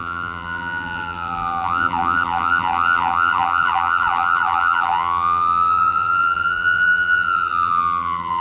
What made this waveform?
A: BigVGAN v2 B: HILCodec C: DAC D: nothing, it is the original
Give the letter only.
A